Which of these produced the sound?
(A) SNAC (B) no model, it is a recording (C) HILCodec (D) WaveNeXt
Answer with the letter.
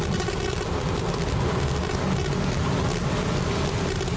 B